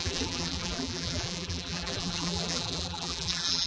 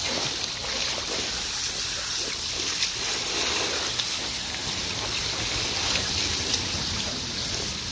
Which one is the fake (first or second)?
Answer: first